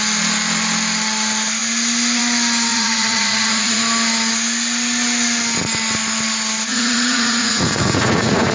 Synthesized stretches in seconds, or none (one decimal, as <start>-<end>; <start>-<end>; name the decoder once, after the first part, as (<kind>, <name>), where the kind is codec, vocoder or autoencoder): 2.7-3.8 (vocoder, Vocos); 6.7-8.5